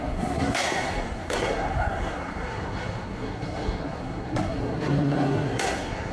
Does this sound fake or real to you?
fake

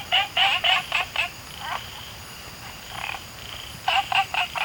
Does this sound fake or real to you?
fake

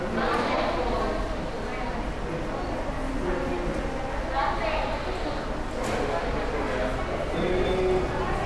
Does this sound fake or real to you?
real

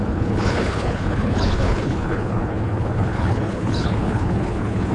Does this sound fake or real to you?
fake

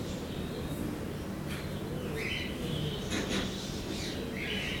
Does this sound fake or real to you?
real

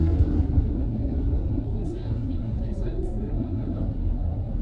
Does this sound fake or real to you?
fake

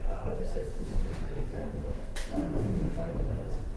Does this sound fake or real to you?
fake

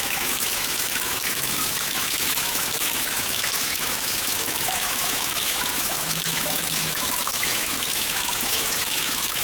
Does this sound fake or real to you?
fake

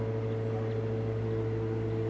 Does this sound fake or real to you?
real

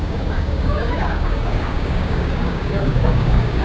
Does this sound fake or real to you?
fake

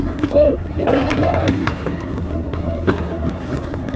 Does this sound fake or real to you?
fake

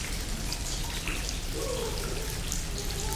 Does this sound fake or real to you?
real